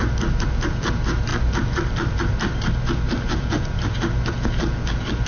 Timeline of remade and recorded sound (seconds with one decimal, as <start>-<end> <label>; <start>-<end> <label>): 0.0-5.3 recorded